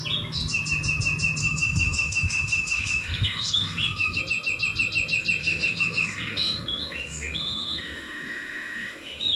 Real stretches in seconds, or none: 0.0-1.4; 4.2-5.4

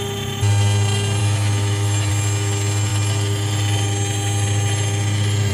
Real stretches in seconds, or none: 0.0-1.2; 2.1-5.5

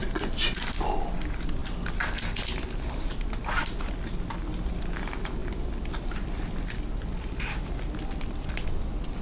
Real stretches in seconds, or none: 0.0-9.2

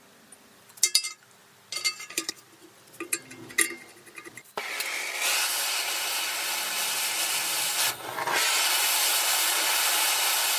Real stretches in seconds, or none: 0.0-10.6